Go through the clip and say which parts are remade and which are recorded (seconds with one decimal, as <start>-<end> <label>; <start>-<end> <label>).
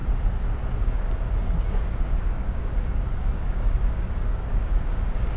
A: 0.0-0.8 recorded; 0.8-5.4 remade